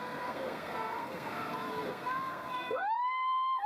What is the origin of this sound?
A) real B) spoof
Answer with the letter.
B